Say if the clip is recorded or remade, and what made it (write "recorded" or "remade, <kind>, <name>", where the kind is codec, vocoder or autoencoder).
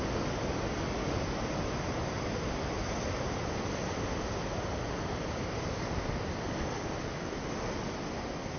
recorded